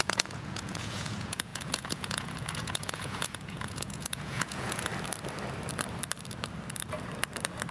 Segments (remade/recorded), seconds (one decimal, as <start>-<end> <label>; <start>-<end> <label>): 0.0-4.9 remade; 4.9-7.7 recorded